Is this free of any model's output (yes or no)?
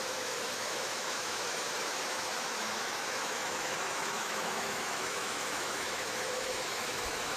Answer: no